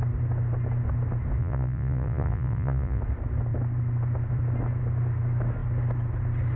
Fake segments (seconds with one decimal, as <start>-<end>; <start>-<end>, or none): 1.4-3.0